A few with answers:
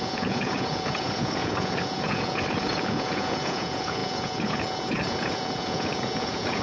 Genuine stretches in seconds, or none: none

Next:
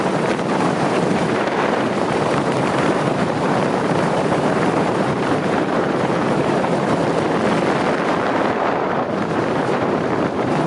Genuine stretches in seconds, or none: 7.0-8.5

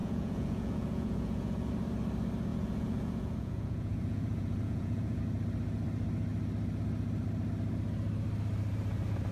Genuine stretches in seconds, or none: 1.7-2.5; 5.2-9.3

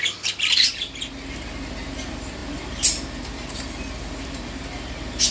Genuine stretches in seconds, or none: 0.0-5.3

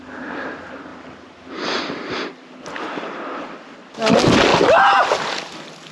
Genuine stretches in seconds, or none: 0.0-5.9

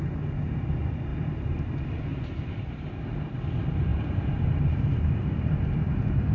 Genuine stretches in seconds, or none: 0.0-1.1; 1.6-2.1; 2.6-3.9; 5.0-6.3

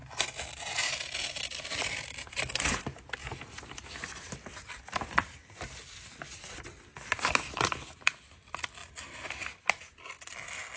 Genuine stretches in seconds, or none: 0.0-10.8

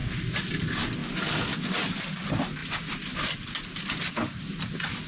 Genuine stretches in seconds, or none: 0.5-1.0; 2.1-2.6; 4.1-5.1